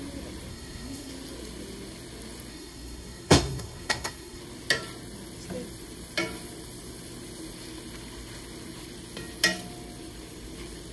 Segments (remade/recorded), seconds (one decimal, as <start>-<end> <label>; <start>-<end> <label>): 0.0-0.5 recorded; 0.5-1.1 remade; 1.1-2.5 recorded; 2.5-4.4 remade; 4.4-10.9 recorded